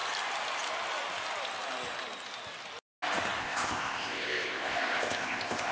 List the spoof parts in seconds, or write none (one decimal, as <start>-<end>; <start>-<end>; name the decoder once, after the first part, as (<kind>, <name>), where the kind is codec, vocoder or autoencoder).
3.4-5.7 (codec, ZipCodec)